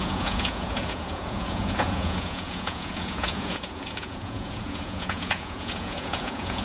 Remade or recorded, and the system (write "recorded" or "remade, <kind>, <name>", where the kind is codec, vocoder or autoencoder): remade, vocoder, Vocos